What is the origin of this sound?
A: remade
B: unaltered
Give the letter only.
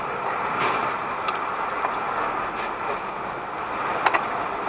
B